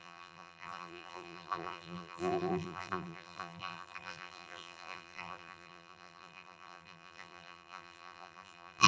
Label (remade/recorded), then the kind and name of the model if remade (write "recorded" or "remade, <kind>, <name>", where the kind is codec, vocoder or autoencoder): remade, vocoder, BigVGAN v2